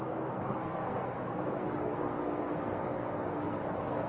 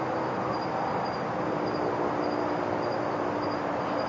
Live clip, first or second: second